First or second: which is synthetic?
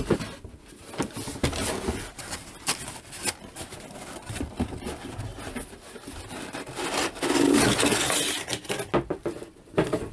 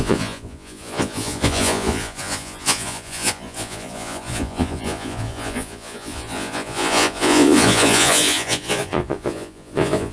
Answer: second